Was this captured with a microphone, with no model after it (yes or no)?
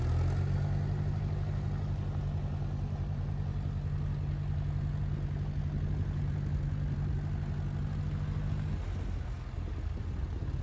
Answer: yes